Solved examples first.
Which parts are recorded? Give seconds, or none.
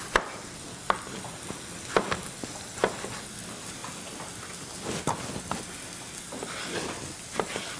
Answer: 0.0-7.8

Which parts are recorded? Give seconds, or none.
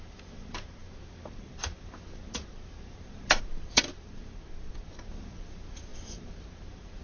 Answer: none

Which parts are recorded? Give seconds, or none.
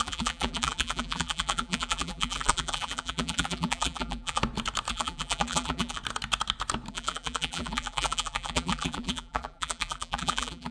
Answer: 4.4-4.9; 6.0-6.9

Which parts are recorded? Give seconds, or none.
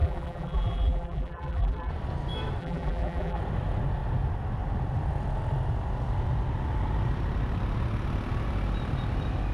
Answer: 1.9-2.6; 3.4-9.5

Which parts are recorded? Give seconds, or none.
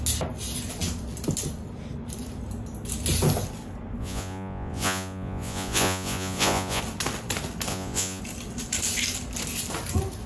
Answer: 0.0-4.0; 6.8-7.7; 8.2-10.3